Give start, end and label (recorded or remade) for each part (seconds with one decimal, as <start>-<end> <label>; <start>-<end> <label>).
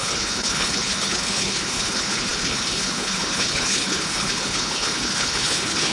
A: 0.0-5.9 remade